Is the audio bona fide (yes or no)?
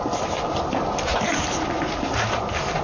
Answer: yes